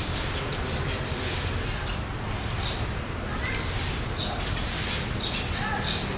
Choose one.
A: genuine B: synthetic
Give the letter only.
A